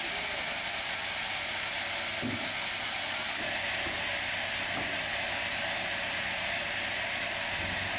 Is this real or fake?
real